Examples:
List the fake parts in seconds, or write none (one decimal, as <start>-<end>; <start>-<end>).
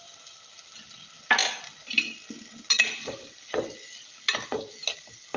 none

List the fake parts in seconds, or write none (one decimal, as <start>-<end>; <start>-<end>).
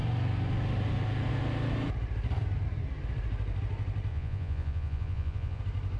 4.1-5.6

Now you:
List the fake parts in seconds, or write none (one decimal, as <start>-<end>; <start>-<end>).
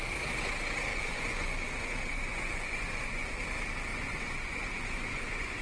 0.9-3.4; 3.9-5.6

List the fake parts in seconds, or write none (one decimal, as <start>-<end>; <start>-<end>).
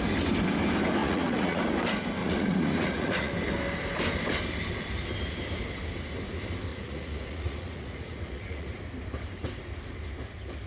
1.0-1.6; 2.2-3.3; 6.7-8.8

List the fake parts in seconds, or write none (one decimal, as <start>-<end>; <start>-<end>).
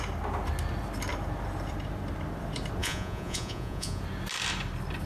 2.8-4.0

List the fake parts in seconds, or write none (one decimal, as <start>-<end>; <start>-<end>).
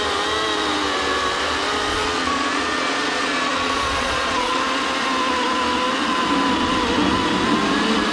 1.9-4.6